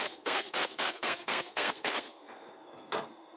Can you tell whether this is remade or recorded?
remade